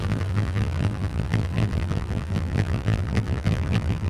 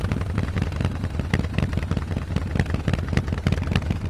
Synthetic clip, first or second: first